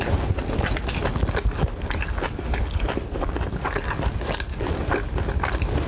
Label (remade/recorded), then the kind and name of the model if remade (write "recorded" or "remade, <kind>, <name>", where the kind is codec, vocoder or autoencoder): recorded